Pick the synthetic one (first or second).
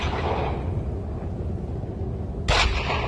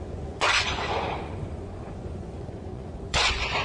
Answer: second